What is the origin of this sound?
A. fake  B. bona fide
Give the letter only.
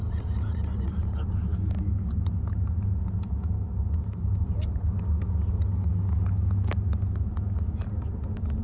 B